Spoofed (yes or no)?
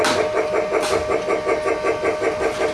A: no